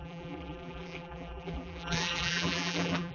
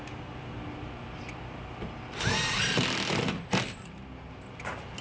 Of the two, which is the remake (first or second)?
first